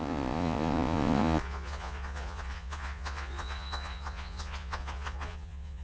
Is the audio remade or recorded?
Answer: remade